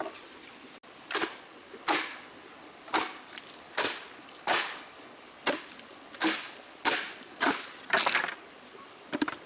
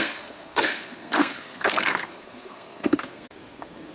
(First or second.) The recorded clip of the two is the first